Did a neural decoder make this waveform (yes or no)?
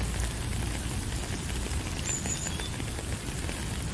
no